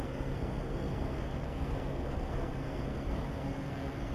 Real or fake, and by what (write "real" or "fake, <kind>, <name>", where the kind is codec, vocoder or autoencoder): fake, codec, SNAC